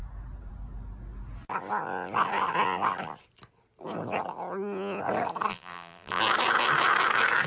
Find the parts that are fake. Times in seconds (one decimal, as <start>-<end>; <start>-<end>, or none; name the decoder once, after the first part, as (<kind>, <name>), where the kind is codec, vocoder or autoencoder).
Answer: 5.5-6.2 (vocoder, BigVGAN v2)